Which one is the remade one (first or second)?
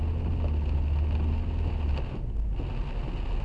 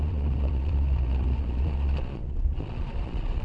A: second